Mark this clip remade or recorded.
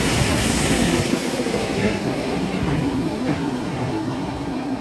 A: remade